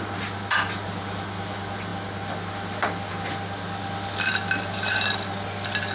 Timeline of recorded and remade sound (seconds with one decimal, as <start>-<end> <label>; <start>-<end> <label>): 0.0-5.9 recorded